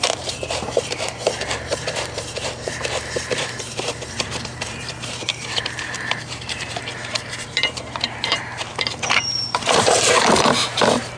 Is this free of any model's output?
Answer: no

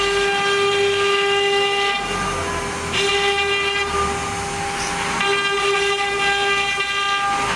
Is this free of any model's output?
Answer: yes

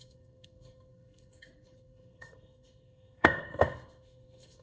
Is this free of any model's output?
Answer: no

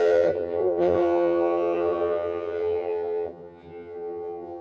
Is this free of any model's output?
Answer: no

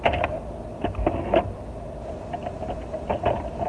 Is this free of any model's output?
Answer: yes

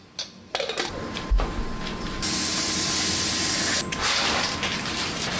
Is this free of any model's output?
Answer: yes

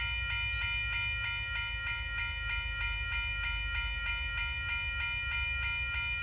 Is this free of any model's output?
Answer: yes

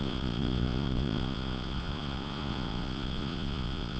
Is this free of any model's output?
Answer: no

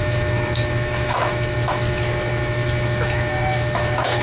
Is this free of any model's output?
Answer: no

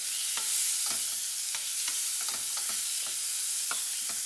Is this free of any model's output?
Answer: yes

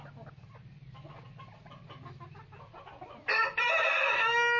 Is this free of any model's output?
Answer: yes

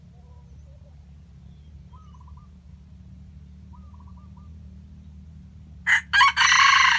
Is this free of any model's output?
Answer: yes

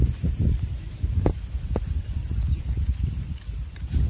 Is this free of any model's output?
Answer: no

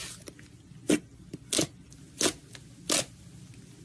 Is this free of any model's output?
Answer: yes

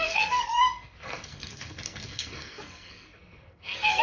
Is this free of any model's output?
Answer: no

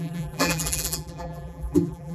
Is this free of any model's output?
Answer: no